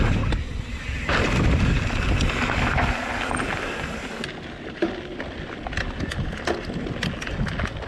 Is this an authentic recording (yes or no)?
yes